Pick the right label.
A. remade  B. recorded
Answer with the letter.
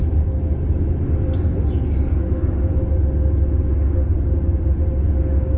B